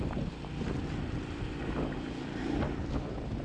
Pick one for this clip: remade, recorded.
recorded